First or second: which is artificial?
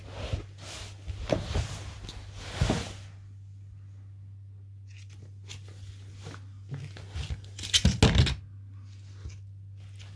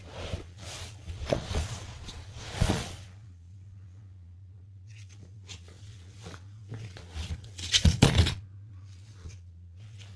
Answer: second